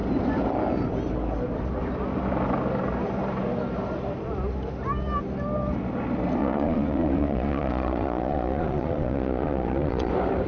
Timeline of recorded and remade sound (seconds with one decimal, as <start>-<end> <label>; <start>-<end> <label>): 0.0-6.4 recorded; 6.4-10.1 remade; 10.1-10.5 recorded